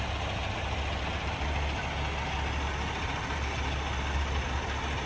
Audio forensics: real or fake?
real